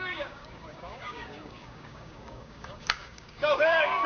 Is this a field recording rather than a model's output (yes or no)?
no